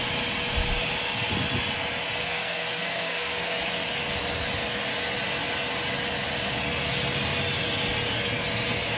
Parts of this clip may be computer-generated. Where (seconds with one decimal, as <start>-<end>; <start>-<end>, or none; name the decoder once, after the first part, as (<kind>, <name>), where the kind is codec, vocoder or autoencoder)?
2.2-3.6 (codec, SNAC)